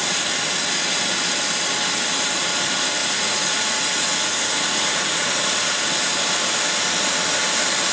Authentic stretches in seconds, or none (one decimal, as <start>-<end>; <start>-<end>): 0.0-3.0; 5.3-7.9